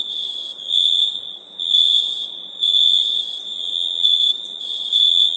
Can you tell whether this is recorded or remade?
remade